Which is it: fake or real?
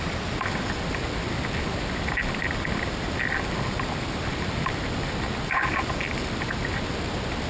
real